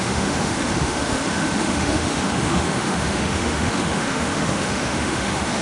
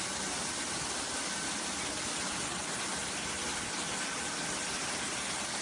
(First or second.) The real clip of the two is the second